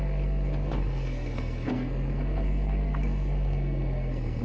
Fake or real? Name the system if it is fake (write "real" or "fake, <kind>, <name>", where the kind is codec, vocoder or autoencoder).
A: fake, codec, SNAC